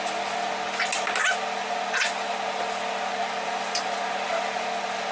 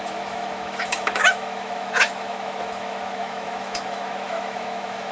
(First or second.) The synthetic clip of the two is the second